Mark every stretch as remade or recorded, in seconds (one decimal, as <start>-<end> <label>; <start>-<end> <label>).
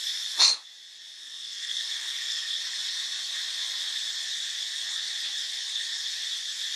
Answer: 0.0-1.2 recorded; 1.2-2.6 remade; 2.6-6.8 recorded